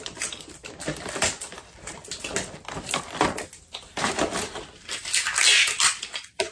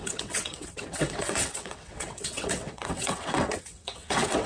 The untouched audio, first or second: first